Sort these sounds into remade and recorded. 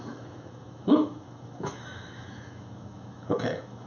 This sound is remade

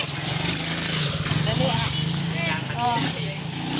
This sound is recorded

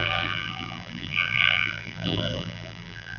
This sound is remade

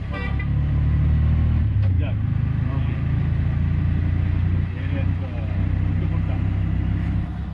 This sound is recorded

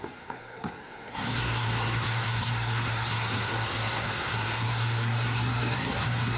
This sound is remade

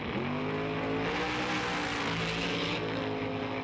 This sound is recorded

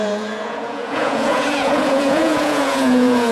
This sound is remade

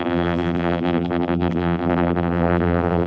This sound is remade